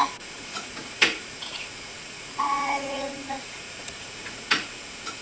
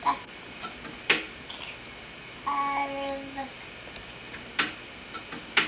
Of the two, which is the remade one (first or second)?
first